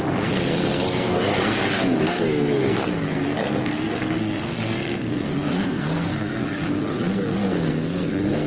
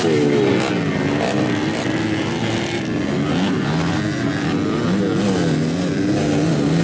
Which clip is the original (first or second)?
second